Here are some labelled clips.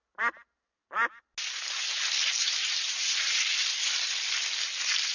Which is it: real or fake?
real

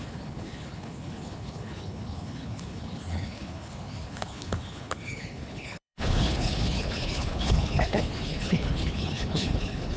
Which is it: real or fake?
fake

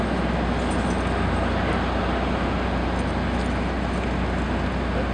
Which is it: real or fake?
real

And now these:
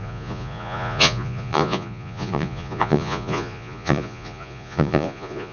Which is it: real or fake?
fake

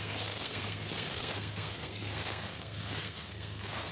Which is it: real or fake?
fake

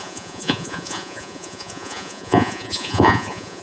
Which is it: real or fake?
fake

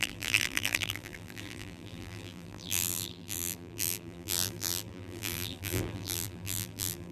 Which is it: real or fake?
fake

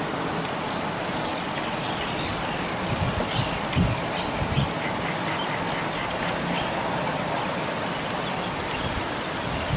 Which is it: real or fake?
real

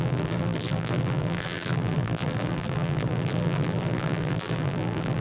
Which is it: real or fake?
fake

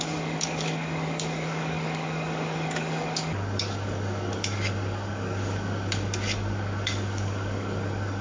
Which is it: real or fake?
fake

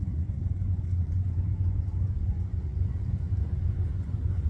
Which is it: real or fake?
fake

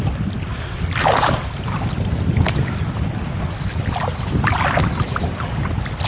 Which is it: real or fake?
real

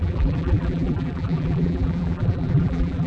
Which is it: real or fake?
fake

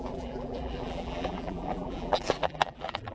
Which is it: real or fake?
fake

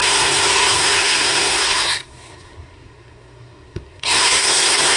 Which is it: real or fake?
fake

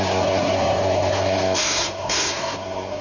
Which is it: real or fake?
fake